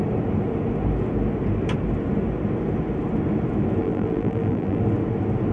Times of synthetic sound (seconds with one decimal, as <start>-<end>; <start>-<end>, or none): 3.8-4.8